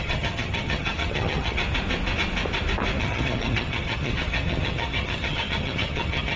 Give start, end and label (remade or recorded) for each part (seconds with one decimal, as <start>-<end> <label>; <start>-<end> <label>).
0.0-1.6 remade; 1.6-3.0 recorded; 3.0-6.4 remade